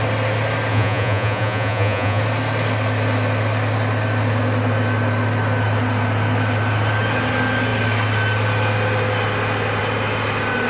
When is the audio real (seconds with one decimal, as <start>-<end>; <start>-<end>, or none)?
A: 0.0-0.7; 2.2-10.7